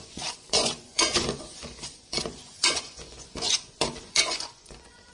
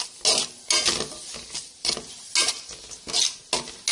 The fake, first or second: first